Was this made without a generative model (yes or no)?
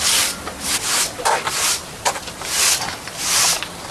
no